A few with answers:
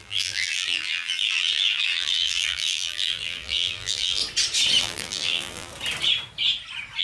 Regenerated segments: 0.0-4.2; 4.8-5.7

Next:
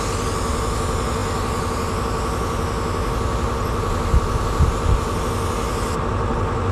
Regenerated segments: none

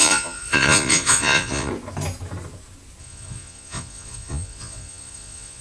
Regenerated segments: 0.0-1.7; 3.0-5.6

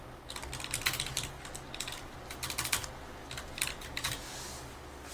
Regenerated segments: none

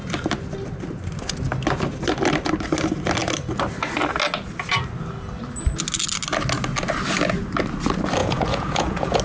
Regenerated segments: 8.2-9.2

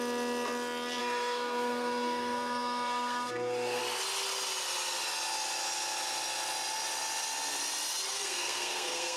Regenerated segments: 1.0-3.8; 8.1-9.2